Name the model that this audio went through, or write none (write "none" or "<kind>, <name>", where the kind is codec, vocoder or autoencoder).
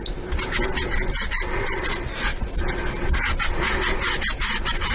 none